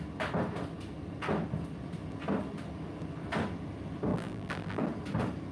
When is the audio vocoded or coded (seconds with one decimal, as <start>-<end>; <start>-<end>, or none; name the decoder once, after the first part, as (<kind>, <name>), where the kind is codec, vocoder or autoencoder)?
4.1-4.8 (vocoder, BigVGAN v2)